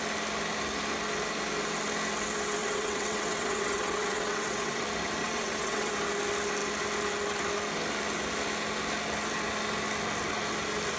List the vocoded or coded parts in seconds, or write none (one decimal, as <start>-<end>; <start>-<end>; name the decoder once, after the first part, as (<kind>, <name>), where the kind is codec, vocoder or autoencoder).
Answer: 2.6-4.8 (vocoder, WaveNeXt); 5.2-5.9